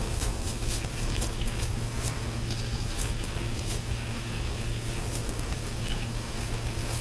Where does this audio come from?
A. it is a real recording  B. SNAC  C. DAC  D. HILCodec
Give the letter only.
B